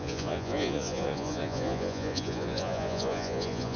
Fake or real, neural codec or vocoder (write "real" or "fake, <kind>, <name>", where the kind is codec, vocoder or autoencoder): fake, vocoder, Vocos